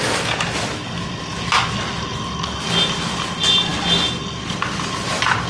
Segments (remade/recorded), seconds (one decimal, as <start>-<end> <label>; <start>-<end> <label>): 0.0-5.5 recorded